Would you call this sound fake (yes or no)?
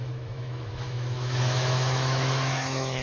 yes